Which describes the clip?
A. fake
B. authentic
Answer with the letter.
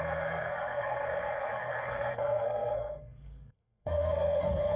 A